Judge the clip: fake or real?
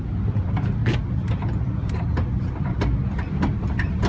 real